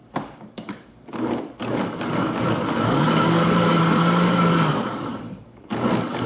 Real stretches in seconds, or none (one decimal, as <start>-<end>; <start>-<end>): none